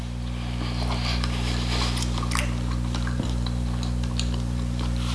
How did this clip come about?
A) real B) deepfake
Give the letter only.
B